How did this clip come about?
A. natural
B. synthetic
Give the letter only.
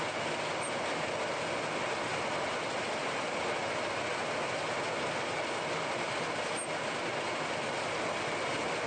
A